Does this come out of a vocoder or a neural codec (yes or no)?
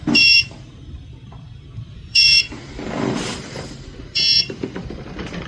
yes